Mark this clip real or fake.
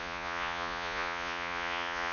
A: fake